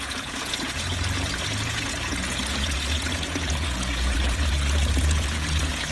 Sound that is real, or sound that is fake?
fake